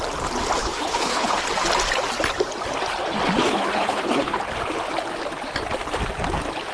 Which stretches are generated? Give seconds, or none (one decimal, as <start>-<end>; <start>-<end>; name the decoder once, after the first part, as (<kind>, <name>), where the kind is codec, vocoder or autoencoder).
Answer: 0.6-1.4 (codec, HILCodec); 3.4-4.4